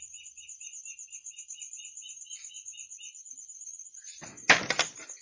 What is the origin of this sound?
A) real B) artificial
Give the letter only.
A